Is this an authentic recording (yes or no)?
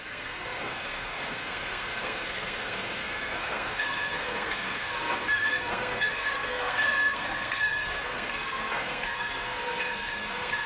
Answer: no